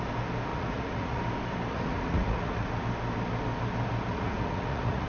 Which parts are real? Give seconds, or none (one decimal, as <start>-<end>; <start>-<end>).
0.0-0.5; 1.2-1.7; 2.8-4.1